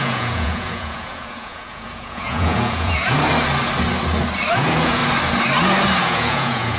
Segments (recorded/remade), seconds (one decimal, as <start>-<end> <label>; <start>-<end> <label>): 0.0-3.3 remade; 3.3-4.5 recorded; 4.5-5.0 remade; 5.0-6.0 recorded; 6.0-6.8 remade